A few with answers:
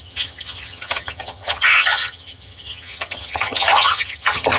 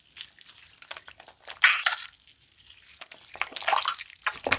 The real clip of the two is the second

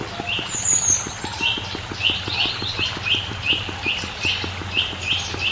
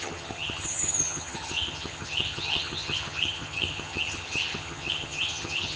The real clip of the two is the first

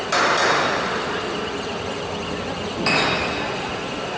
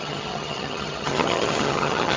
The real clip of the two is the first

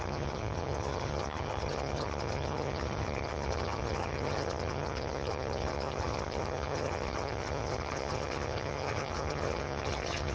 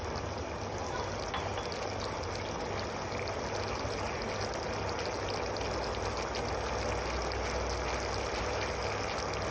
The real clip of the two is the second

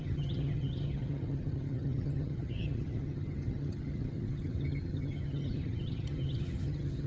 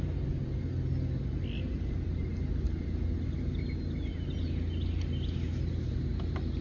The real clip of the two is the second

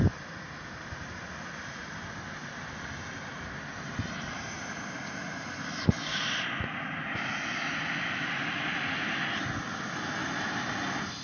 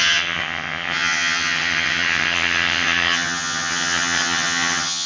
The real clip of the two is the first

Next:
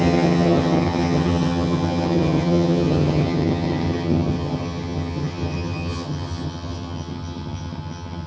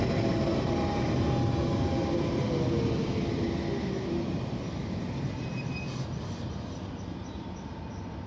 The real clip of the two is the second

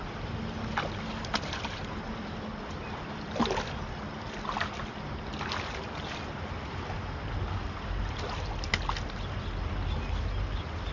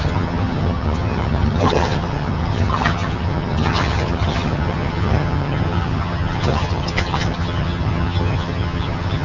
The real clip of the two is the first